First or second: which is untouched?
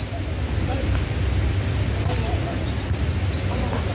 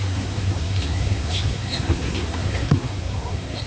first